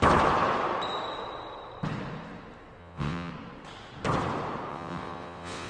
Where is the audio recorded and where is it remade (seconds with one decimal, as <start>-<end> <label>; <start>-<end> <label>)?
0.0-2.8 recorded; 2.8-3.3 remade; 3.3-4.7 recorded; 4.7-5.7 remade